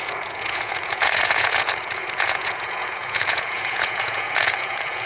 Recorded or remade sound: remade